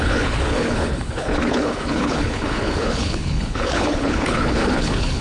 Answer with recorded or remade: remade